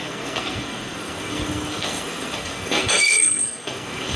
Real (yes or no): no